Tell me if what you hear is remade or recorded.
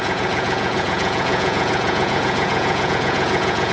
remade